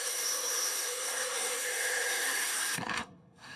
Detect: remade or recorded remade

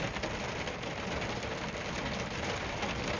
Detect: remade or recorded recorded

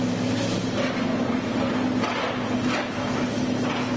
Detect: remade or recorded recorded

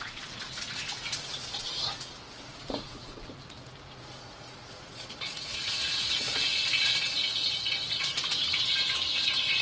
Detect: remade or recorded remade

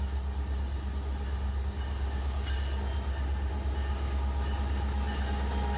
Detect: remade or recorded recorded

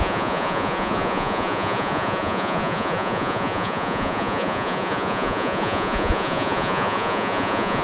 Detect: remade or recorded remade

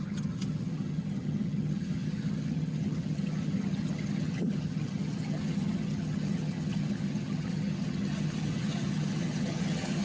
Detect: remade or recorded remade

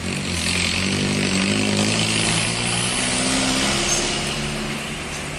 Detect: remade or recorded recorded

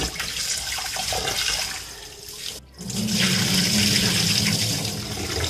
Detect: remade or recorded recorded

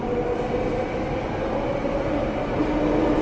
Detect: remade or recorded recorded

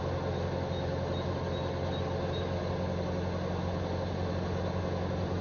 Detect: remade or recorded recorded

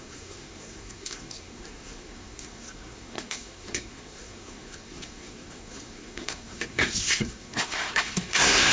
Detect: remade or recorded remade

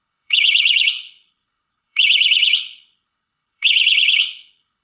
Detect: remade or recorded remade